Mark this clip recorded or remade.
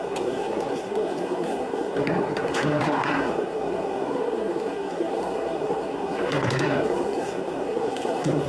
remade